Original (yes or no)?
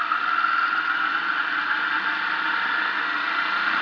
yes